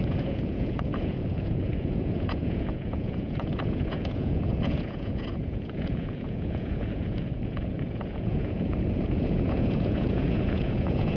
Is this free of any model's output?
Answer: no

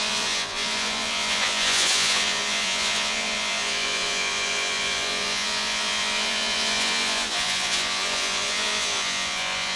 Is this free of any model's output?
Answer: no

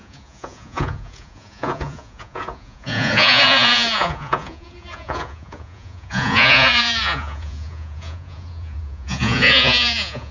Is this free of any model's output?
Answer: no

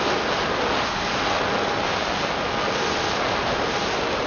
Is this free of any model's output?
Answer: yes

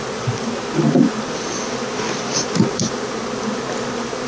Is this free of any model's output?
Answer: yes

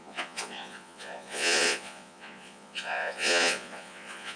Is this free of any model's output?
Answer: no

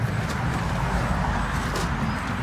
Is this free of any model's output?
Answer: yes